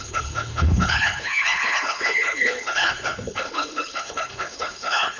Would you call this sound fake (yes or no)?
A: yes